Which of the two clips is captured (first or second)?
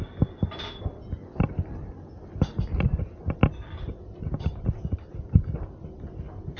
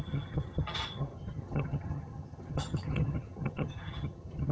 first